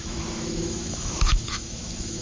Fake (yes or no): yes